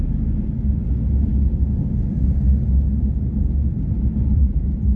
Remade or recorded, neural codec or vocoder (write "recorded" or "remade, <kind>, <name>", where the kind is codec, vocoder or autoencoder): recorded